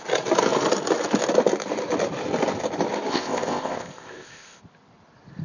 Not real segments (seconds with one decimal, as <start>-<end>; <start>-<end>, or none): 3.1-4.6